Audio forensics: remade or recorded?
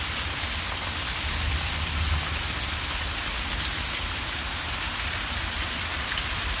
recorded